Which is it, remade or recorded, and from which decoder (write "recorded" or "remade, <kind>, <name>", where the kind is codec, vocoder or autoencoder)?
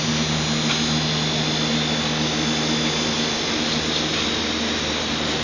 recorded